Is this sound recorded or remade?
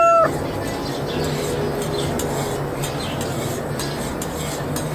recorded